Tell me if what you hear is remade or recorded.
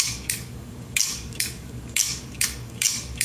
remade